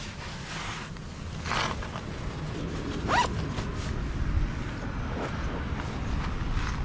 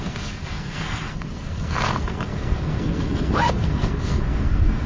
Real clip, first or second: first